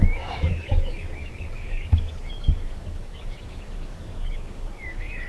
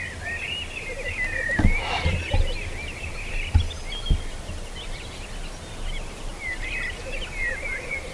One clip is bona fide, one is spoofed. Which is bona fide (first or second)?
second